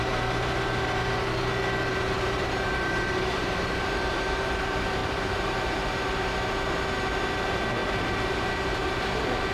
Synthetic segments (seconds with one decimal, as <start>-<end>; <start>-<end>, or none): 1.9-4.6; 5.0-5.9; 7.8-8.9